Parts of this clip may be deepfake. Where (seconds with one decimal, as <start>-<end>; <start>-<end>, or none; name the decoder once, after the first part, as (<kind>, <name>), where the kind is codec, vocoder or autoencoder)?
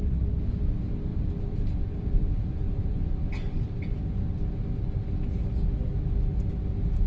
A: 1.1-3.7 (vocoder, BigVGAN v2)